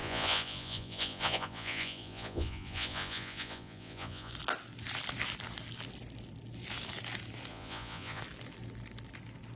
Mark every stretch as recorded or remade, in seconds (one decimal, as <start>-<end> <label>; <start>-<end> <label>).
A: 0.0-4.3 remade; 4.3-7.5 recorded; 7.5-8.2 remade; 8.2-9.6 recorded